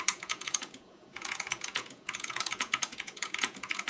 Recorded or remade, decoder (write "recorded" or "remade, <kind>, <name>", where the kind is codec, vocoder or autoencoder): remade, vocoder, Vocos